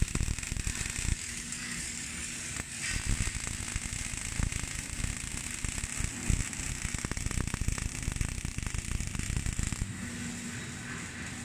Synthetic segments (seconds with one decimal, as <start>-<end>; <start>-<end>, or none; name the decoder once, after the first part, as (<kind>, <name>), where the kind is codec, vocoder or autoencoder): 1.1-2.7 (codec, DAC)